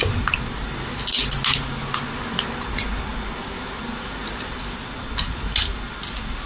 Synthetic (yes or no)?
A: no